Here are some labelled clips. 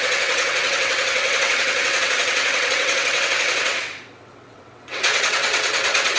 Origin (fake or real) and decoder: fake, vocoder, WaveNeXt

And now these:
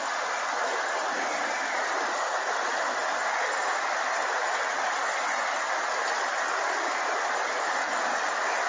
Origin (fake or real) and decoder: real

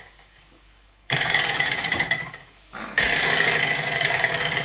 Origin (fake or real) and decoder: fake, codec, DAC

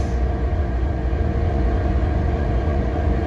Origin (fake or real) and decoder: fake, vocoder, Vocos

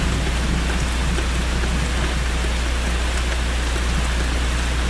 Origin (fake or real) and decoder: real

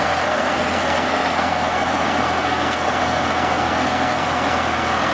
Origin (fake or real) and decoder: fake, codec, SNAC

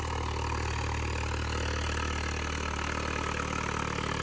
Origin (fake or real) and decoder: real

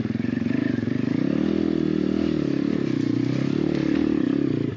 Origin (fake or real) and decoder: real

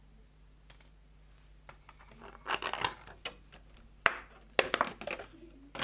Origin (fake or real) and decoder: real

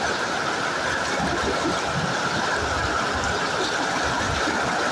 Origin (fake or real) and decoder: real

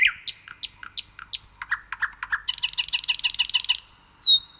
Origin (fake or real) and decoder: real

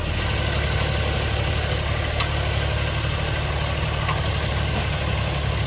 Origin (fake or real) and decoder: real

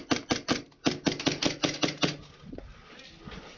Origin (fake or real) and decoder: real